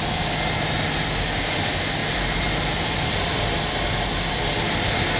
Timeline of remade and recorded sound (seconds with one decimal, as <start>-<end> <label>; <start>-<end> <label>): 0.0-2.0 recorded; 2.0-3.4 remade; 3.4-5.2 recorded